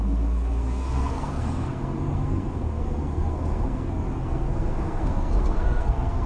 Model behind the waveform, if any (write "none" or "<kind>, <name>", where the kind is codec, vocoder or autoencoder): codec, SNAC